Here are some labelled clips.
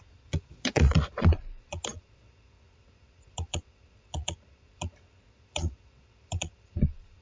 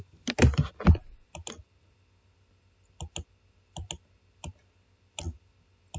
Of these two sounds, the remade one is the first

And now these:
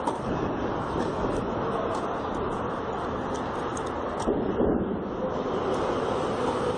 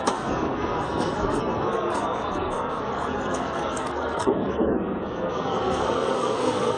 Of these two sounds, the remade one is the second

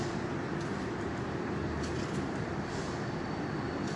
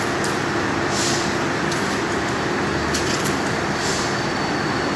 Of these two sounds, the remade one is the first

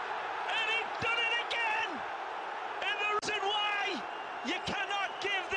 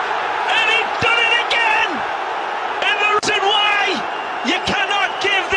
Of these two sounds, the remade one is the second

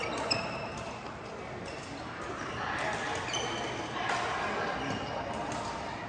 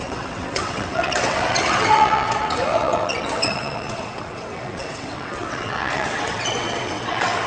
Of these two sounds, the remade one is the second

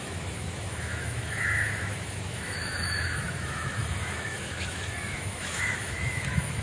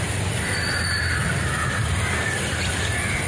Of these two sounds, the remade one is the first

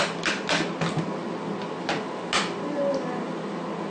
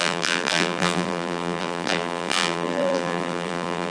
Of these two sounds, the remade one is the second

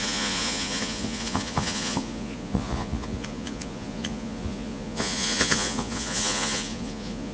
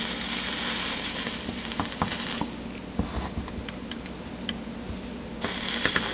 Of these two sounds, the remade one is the first